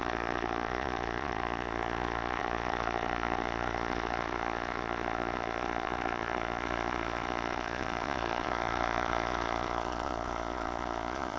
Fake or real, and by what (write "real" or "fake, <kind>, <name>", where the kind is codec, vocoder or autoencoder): fake, vocoder, Vocos